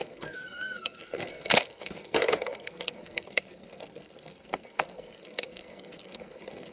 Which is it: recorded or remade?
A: remade